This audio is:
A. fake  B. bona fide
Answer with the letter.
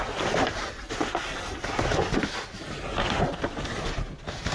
B